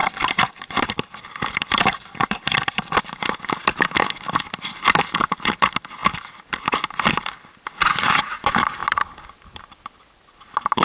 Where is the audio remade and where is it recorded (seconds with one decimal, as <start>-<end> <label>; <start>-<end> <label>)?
0.0-3.0 remade; 3.0-8.8 recorded; 8.8-9.8 remade; 9.8-10.8 recorded